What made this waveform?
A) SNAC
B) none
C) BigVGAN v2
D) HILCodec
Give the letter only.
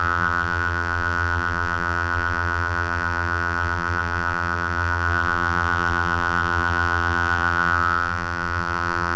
C